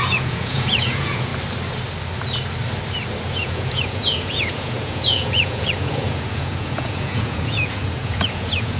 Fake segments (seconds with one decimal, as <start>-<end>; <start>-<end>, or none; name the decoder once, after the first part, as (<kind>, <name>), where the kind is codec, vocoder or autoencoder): 0.0-1.3 (vocoder, Vocos); 3.3-8.8